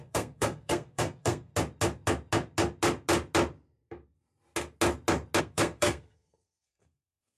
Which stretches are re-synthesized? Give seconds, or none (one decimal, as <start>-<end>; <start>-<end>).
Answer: 0.0-1.5; 5.4-7.4